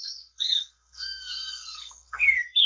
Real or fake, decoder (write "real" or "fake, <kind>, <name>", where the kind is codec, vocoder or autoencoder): fake, codec, SNAC